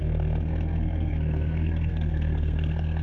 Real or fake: fake